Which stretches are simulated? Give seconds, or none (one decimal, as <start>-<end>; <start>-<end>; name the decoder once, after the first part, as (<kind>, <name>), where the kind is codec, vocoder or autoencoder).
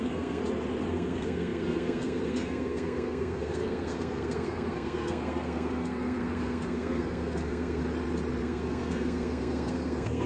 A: 0.0-0.4 (codec, SNAC); 0.9-7.8; 8.4-10.3